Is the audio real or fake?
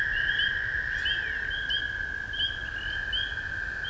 real